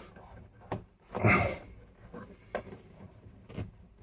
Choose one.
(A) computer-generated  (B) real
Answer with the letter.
A